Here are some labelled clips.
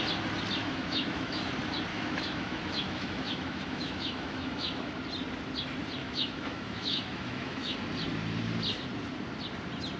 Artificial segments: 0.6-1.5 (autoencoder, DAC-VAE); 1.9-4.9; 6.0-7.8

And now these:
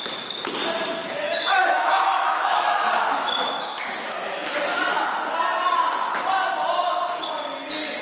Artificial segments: 1.0-4.6 (autoencoder, DAC-VAE)

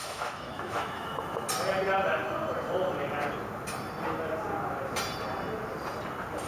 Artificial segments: 0.0-1.5 (autoencoder, DAC-VAE)

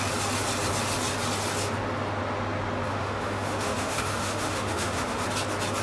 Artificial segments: 2.9-5.2 (autoencoder, DAC-VAE)

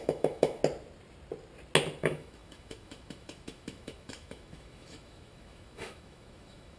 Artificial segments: 0.0-0.6 (autoencoder, DAC-VAE); 2.0-6.8

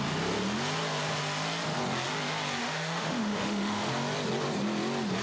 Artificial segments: 2.6-3.9 (autoencoder, DAC-VAE)